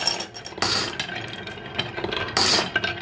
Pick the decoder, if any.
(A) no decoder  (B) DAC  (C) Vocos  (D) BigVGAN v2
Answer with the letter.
A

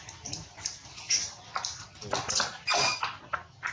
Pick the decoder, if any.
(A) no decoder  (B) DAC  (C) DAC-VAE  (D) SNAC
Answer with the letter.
A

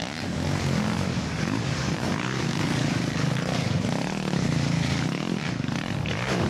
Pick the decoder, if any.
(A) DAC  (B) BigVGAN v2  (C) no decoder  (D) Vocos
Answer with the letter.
A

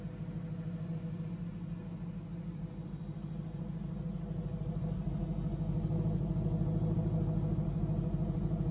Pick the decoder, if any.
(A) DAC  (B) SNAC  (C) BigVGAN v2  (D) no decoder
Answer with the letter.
D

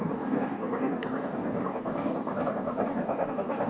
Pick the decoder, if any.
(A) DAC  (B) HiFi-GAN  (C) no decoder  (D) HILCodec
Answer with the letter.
A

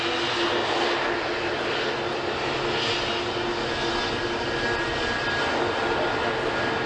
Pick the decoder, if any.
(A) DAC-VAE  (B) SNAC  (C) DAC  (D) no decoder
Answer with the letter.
D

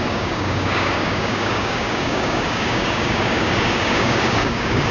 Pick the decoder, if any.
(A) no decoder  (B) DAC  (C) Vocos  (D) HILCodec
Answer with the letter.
B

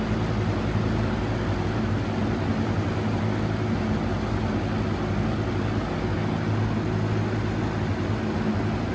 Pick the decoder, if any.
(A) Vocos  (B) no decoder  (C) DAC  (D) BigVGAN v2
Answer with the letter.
B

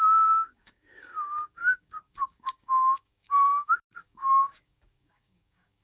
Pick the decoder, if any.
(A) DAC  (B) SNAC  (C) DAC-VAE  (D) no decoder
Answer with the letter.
A